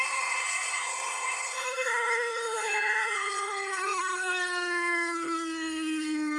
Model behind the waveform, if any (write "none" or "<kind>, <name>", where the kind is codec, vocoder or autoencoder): codec, SNAC